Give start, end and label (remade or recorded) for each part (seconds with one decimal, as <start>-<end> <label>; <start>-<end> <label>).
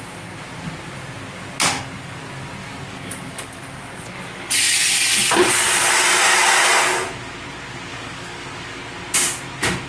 0.0-2.6 recorded; 2.6-3.6 remade; 3.6-7.9 recorded; 7.9-8.8 remade; 8.8-9.9 recorded